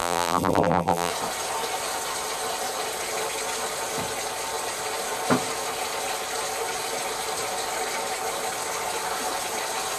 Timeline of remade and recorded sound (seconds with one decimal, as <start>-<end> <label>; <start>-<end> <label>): 0.0-1.1 remade; 1.1-10.0 recorded